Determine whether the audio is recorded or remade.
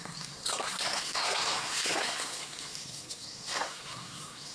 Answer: remade